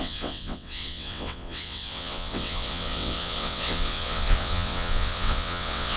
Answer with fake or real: fake